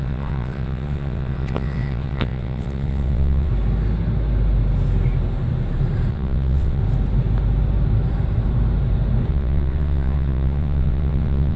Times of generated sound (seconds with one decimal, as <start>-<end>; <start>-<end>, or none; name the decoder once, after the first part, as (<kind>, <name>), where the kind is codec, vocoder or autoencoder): 0.0-3.5 (vocoder, WaveNeXt); 6.1-6.8; 9.3-11.6